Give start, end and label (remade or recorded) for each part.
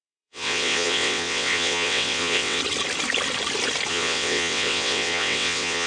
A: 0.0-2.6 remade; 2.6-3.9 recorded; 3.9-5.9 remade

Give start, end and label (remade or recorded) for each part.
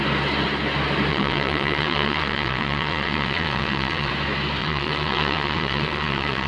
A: 0.0-1.1 recorded; 1.1-4.1 remade; 4.1-4.6 recorded; 4.6-6.5 remade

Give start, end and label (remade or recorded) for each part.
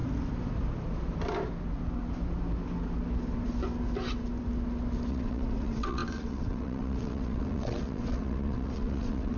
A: 0.0-5.1 recorded; 5.1-9.4 remade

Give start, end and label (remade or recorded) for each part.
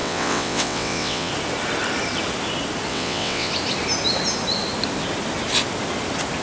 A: 0.0-1.3 remade; 1.3-2.9 recorded; 2.9-3.5 remade; 3.5-6.4 recorded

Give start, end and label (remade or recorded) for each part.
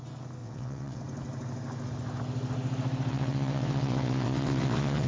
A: 0.0-0.4 recorded; 0.4-1.0 remade; 1.0-3.1 recorded; 3.1-5.1 remade